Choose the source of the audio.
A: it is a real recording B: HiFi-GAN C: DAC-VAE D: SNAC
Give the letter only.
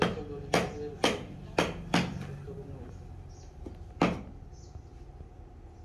A